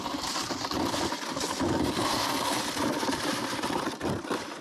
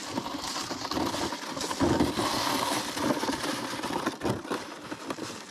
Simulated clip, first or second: first